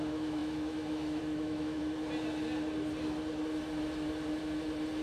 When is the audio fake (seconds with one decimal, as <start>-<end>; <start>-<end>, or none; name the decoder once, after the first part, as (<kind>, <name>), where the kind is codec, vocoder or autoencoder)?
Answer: 0.0-1.8 (autoencoder, DAC-VAE)